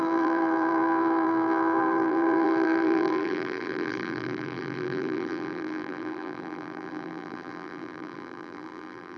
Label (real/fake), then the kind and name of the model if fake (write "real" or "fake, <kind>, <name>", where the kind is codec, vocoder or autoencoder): fake, vocoder, BigVGAN v2